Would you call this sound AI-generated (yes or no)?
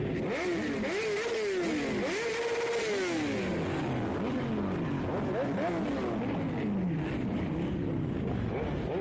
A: no